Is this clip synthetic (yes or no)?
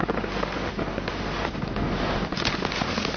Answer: no